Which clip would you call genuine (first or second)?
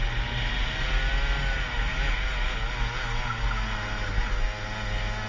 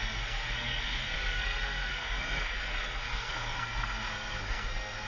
first